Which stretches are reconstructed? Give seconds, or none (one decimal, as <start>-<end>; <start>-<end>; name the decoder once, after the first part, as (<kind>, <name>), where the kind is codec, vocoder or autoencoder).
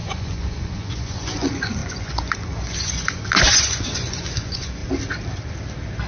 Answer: 0.0-4.8 (vocoder, Vocos)